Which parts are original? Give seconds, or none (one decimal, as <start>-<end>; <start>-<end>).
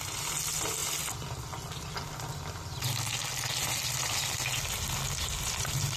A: 0.0-6.0